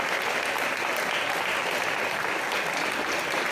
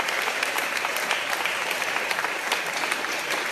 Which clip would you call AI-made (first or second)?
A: second